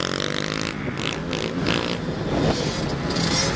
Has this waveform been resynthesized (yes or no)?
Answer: no